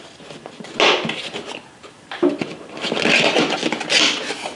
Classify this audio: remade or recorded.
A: recorded